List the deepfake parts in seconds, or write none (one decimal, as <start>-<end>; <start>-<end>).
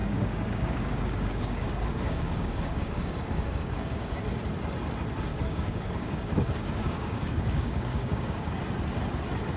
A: 0.0-4.2; 5.3-8.6